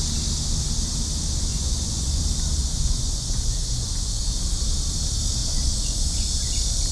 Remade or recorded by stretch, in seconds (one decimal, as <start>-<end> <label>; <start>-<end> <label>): 0.0-1.5 recorded; 1.5-2.2 remade; 2.2-2.6 recorded; 2.6-4.2 remade; 4.2-5.4 recorded; 5.4-6.5 remade; 6.5-6.9 recorded